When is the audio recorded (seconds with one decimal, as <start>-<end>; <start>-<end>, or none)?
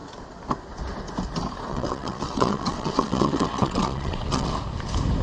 0.0-1.7; 4.5-5.2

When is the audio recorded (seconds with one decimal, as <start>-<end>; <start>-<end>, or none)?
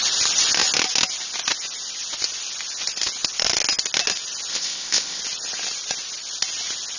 0.0-4.5; 5.2-7.0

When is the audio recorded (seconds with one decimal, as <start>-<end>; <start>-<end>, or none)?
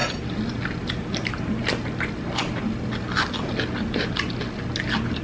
0.0-5.2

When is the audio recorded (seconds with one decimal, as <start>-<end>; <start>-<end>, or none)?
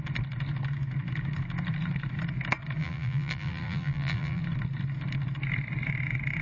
0.0-2.8; 4.4-6.4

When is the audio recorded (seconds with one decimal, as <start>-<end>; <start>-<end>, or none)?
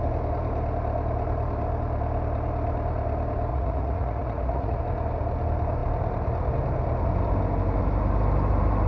0.0-3.5; 4.8-8.9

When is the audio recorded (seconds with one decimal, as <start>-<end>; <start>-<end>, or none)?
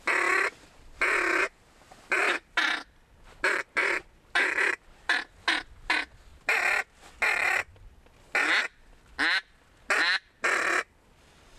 0.0-11.6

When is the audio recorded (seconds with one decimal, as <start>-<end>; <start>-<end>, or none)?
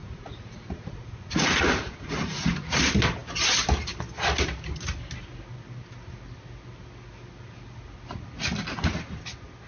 2.8-9.7